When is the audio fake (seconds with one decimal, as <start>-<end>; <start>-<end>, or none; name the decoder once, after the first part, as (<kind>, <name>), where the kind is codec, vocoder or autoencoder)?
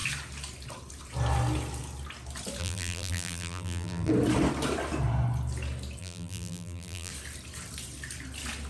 2.6-4.1 (vocoder, BigVGAN v2); 6.0-7.1